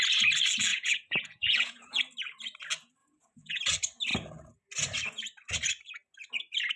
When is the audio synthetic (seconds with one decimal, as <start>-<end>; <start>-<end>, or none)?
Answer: 0.7-2.0; 3.0-3.6